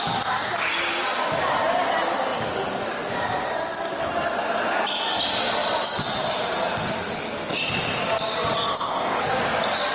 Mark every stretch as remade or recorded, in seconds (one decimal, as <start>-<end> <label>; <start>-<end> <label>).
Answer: 0.0-8.7 recorded; 8.7-9.2 remade; 9.2-9.9 recorded